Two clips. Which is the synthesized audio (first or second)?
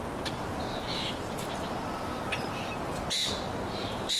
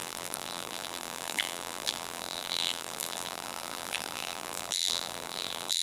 second